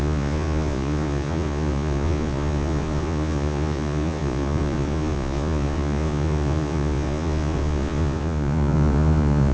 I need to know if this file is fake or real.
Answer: fake